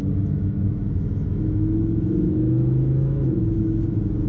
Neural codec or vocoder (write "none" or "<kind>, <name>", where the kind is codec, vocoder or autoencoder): autoencoder, DAC-VAE